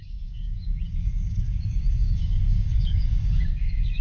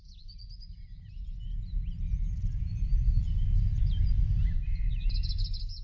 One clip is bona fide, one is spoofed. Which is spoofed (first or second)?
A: first